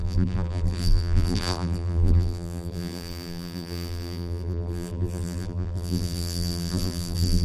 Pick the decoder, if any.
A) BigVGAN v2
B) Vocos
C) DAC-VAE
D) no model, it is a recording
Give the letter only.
A